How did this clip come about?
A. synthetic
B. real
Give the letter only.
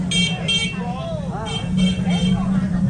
B